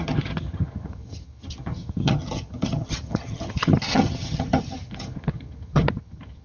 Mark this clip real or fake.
fake